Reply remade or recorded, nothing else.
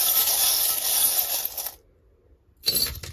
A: recorded